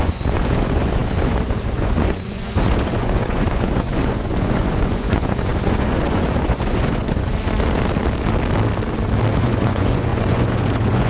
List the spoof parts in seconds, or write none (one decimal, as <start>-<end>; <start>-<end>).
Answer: 0.0-7.3; 9.3-11.1